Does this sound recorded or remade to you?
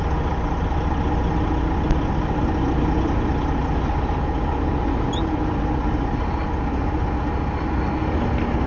recorded